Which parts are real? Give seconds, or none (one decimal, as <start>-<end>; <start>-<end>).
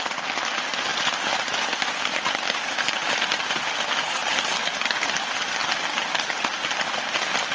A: 0.0-7.5